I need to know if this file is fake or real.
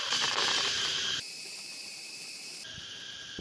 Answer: fake